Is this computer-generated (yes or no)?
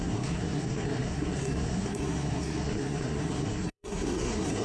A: yes